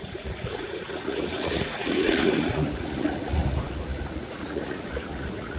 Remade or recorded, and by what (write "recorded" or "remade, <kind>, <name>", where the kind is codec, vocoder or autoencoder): remade, vocoder, Vocos